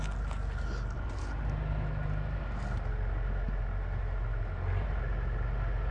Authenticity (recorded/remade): recorded